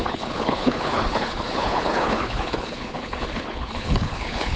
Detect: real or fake fake